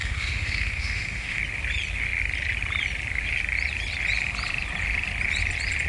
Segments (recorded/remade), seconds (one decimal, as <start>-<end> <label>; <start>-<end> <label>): 0.0-1.4 remade; 1.4-5.9 recorded